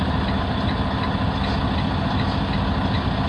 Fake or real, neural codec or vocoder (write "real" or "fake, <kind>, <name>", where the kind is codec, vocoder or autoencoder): real